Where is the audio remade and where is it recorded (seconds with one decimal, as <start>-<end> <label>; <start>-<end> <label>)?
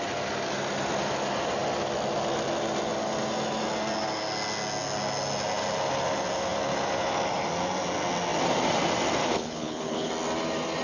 0.0-9.3 recorded; 9.3-10.1 remade; 10.1-10.8 recorded